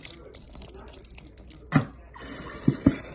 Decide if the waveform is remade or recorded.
recorded